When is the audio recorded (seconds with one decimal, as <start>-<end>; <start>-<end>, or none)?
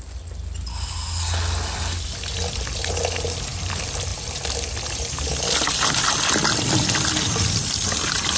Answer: 0.0-8.4